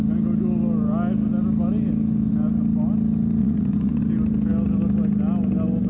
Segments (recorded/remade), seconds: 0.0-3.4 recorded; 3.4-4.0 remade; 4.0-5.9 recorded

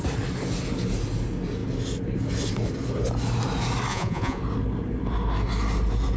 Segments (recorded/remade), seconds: 0.0-3.9 recorded; 3.9-4.4 remade; 4.4-6.2 recorded

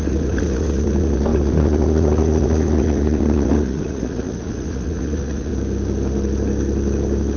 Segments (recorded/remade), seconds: 0.0-5.5 remade; 5.5-7.4 recorded

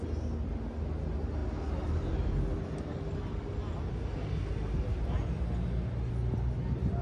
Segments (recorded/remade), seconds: 0.0-7.0 recorded

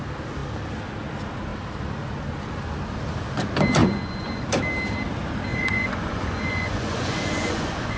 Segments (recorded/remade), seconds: 0.0-3.8 recorded; 3.8-4.5 remade; 4.5-5.5 recorded; 5.5-8.0 remade

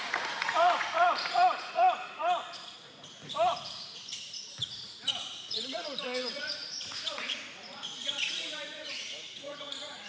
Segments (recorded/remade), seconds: 0.0-10.1 remade

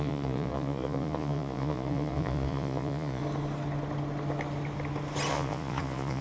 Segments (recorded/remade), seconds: 0.0-3.2 remade; 3.2-5.3 recorded; 5.3-6.2 remade